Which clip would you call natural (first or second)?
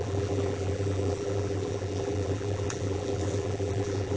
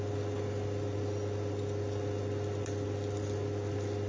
second